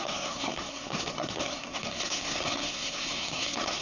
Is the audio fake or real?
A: fake